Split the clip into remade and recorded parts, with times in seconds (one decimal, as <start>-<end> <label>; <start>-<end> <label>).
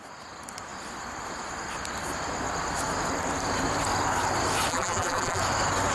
0.0-4.7 recorded; 4.7-5.4 remade; 5.4-5.9 recorded